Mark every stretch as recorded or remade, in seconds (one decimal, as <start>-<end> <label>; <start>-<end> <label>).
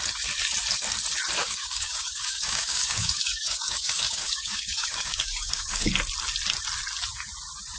0.0-1.4 recorded; 1.4-5.9 remade; 5.9-7.8 recorded